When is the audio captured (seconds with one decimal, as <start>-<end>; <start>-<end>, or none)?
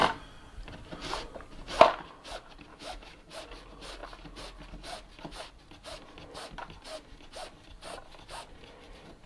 0.0-2.7; 3.3-9.3